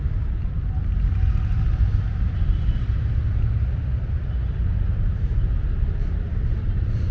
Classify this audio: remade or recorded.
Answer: recorded